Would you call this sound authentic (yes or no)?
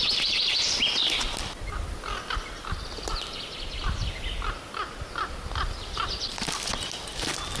yes